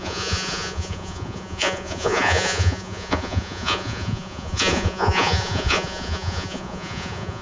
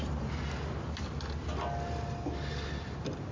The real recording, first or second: second